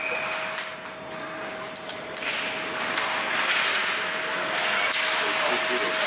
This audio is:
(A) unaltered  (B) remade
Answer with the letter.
A